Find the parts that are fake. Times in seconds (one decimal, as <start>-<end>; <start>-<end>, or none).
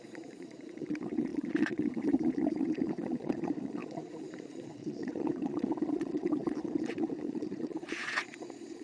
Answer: 0.0-8.8